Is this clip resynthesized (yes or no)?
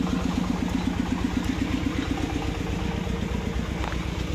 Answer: no